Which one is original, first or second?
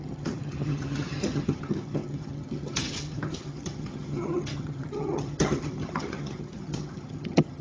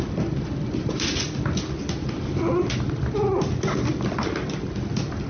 second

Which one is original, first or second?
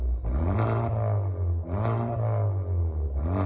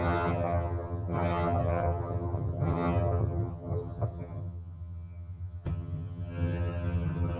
first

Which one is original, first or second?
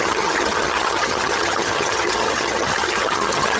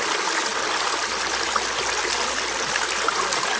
second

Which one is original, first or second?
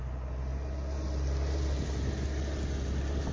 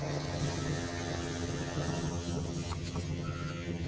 first